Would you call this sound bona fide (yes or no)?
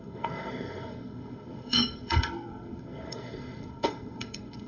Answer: no